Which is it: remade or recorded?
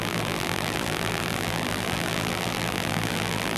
remade